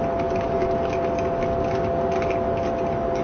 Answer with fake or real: real